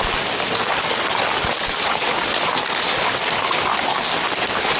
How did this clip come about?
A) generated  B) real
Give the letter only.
B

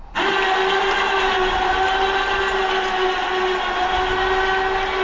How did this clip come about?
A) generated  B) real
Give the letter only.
B